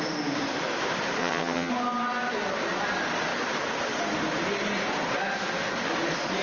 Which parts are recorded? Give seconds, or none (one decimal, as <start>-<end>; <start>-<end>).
0.0-1.2; 1.7-6.4